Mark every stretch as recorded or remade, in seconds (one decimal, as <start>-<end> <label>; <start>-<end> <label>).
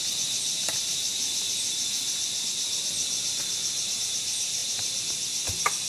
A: 0.0-5.9 recorded